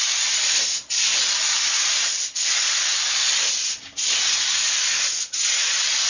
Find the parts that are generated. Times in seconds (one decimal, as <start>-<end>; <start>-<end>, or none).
none